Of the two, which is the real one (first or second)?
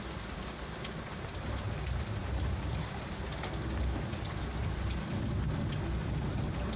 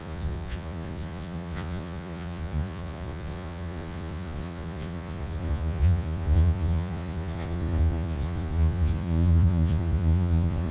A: first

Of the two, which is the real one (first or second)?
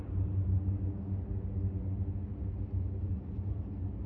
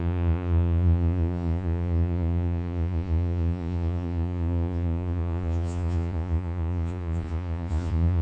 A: first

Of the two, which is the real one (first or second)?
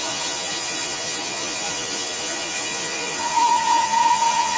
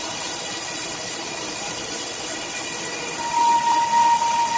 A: second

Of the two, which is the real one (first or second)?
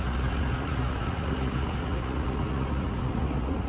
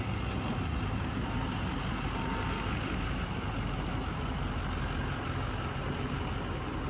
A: second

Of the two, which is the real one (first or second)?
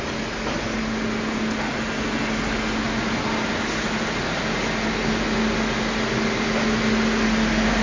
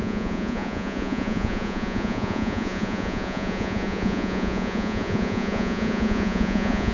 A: first